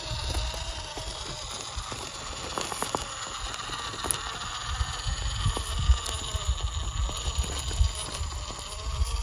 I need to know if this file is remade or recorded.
recorded